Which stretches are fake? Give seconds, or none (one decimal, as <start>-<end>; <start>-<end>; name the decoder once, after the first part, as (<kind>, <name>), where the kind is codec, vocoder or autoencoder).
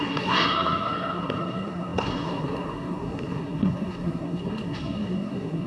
0.0-5.7 (codec, SNAC)